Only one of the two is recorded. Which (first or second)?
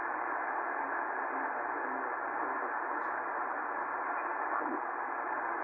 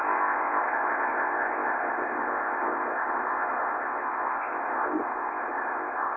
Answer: first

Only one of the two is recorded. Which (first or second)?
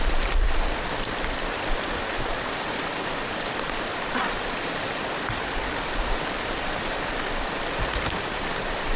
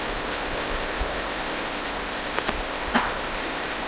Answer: first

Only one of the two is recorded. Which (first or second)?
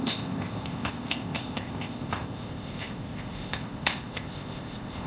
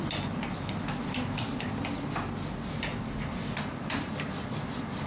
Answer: second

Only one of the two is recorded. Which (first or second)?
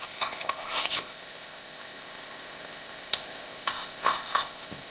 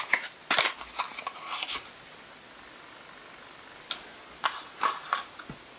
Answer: second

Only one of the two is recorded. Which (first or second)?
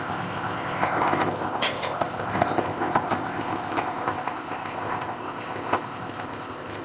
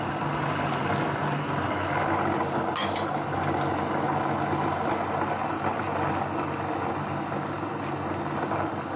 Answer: second